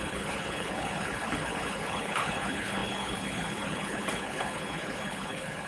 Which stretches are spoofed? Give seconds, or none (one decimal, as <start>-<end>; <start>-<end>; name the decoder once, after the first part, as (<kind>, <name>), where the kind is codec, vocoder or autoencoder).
0.0-5.7 (codec, HILCodec)